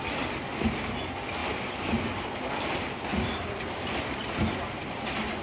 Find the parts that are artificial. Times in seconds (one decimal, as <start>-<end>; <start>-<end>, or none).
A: 1.4-4.6